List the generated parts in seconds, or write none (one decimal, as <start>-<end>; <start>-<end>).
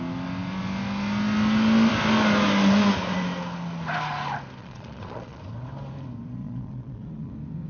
4.6-5.4; 6.4-7.3